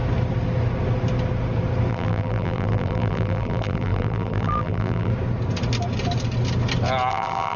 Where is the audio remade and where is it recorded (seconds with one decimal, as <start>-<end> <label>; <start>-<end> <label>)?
0.0-1.9 recorded; 1.9-5.1 remade; 5.1-7.1 recorded; 7.1-7.6 remade